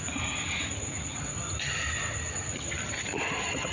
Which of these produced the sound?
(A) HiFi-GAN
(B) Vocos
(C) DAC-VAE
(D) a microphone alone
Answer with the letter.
D